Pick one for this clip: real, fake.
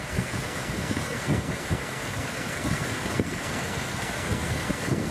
fake